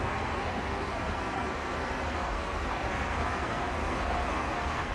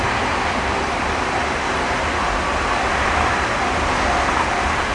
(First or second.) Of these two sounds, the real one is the second